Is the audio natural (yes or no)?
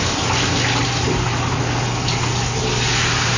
yes